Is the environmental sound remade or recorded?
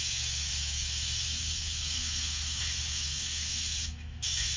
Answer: remade